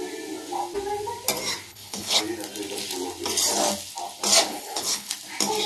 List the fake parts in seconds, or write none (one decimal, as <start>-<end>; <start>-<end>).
1.7-2.2; 4.5-5.1